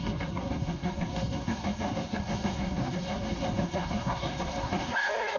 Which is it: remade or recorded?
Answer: remade